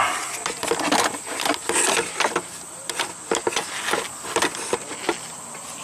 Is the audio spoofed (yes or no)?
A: no